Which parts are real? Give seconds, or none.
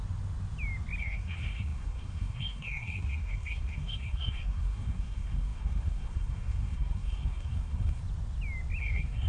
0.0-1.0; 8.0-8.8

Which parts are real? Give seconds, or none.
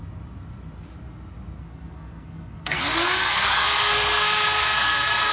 0.0-1.6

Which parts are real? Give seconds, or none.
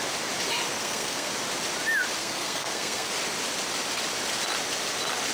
0.0-0.8; 1.3-2.2; 3.1-5.3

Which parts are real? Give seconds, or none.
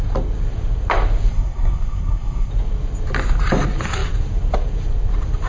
0.0-1.3; 2.5-5.5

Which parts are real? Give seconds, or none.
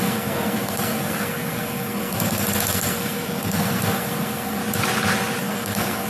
4.6-5.4